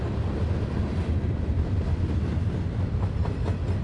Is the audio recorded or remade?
recorded